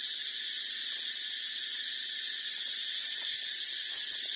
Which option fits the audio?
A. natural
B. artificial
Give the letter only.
A